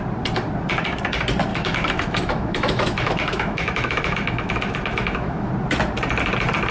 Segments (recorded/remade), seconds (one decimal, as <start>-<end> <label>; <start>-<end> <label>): 0.0-1.5 recorded; 1.5-5.5 remade; 5.5-6.7 recorded